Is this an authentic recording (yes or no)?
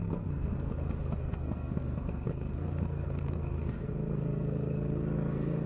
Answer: no